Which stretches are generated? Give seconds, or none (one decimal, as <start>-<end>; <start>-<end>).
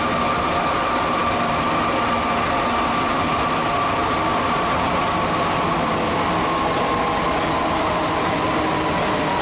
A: none